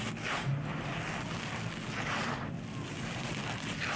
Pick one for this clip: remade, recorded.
recorded